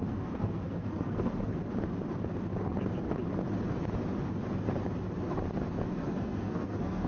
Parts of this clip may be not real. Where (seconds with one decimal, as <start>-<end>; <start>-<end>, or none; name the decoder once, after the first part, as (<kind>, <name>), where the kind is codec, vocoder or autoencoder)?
0.0-1.6 (codec, SNAC); 5.9-7.1